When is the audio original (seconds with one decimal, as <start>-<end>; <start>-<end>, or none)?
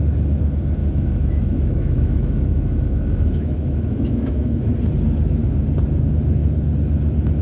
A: 0.0-0.8; 4.7-7.4